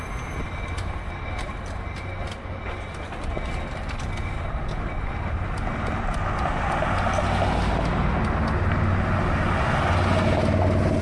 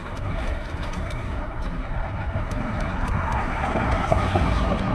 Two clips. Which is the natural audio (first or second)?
first